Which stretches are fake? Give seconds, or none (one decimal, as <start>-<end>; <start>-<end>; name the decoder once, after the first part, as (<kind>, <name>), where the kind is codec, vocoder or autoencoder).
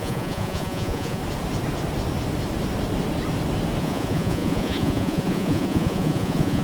0.0-1.2 (vocoder, Vocos); 3.8-6.6